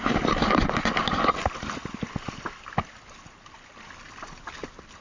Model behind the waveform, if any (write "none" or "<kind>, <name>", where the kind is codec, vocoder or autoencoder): none